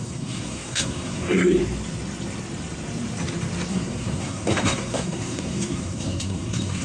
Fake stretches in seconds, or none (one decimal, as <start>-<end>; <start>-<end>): 0.0-1.6; 3.7-6.8